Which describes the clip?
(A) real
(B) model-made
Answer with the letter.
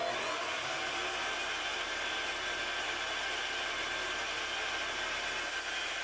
A